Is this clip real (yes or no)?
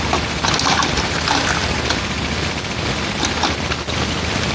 yes